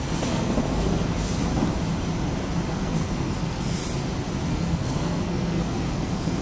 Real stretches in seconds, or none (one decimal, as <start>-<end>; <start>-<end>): 1.4-2.7; 3.8-4.5